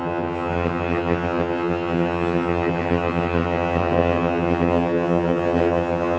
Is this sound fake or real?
fake